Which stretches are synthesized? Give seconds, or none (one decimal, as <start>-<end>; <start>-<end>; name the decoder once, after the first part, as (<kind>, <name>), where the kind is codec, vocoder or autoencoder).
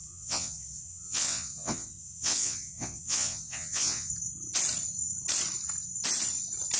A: 0.0-4.1 (vocoder, WaveNeXt)